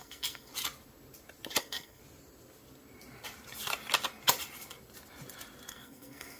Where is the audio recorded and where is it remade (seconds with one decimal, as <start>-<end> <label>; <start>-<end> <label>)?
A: 0.0-0.5 remade; 0.5-1.6 recorded; 1.6-2.0 remade; 2.0-5.7 recorded; 5.7-6.4 remade